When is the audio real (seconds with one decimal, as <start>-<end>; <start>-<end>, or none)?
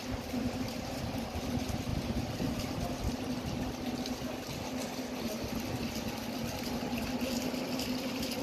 0.0-8.4